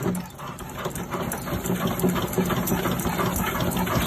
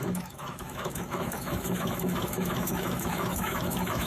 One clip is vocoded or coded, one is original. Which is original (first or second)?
first